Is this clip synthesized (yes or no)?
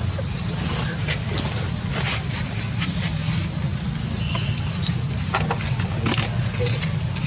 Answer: no